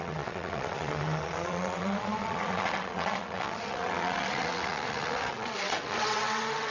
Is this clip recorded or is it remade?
remade